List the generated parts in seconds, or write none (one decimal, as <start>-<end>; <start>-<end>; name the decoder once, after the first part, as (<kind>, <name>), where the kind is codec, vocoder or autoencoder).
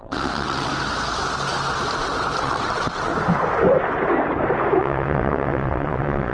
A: 0.0-0.7 (vocoder, WaveNeXt); 2.4-3.1; 4.8-6.3